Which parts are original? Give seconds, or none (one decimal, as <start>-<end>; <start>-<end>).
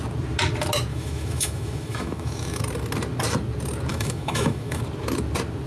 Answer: 0.0-0.9; 2.6-3.9; 4.8-5.7